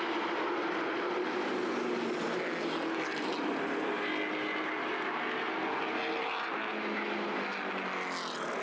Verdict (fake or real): real